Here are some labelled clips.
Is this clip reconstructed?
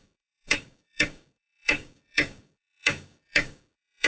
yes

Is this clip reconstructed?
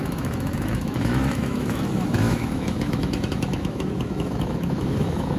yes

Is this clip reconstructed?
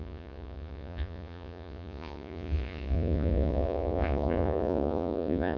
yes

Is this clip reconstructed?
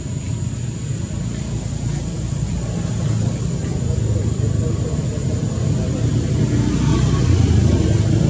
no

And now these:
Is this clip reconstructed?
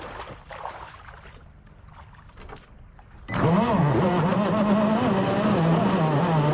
no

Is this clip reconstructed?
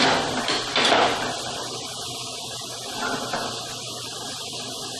no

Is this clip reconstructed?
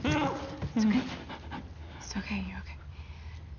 no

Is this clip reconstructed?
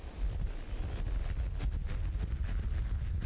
no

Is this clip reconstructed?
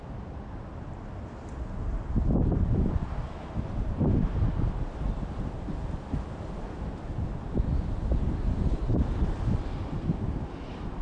no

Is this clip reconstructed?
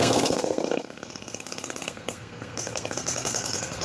yes